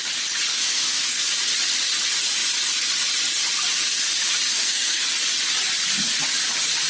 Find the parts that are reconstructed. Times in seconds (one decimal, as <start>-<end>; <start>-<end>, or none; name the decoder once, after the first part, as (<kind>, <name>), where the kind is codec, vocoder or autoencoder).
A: 0.5-1.2 (codec, SNAC); 4.5-5.0